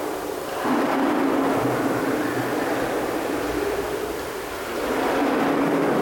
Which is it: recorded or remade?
recorded